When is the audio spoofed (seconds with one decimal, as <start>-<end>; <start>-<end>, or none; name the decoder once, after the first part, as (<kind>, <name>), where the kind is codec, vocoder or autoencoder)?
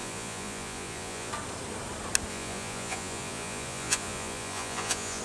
0.0-1.3 (vocoder, Vocos); 2.3-5.2